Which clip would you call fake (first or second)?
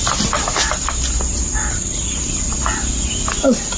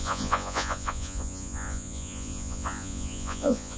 second